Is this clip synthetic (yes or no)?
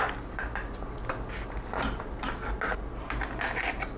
no